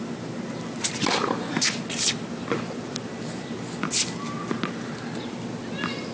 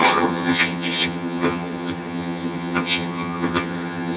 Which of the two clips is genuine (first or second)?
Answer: first